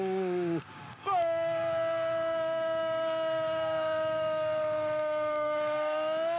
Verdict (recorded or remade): remade